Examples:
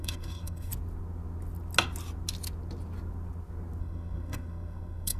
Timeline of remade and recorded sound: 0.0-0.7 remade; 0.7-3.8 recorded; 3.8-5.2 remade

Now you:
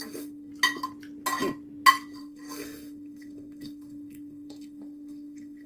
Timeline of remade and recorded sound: 0.0-0.5 remade; 0.5-2.2 recorded; 2.2-5.7 remade

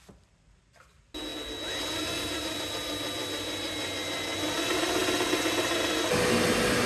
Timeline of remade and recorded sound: 0.0-6.9 recorded

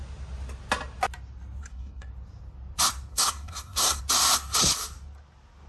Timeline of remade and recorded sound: 0.0-1.6 recorded; 1.6-2.1 remade; 2.1-3.1 recorded; 3.1-4.0 remade; 4.0-5.7 recorded

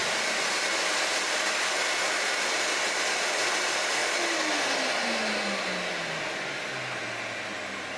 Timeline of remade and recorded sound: 0.0-8.0 recorded